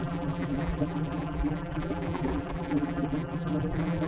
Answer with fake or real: fake